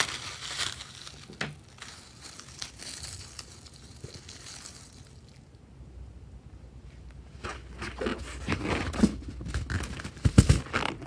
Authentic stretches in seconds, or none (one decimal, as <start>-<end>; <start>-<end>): 0.0-11.1